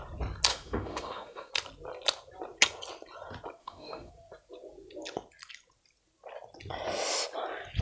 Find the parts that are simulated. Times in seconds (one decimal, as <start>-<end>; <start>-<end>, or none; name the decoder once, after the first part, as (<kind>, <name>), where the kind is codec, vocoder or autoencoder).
0.5-1.5 (autoencoder, DAC-VAE); 3.6-4.1